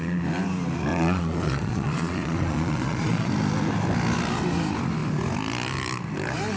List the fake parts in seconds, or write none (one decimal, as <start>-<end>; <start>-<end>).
0.9-3.3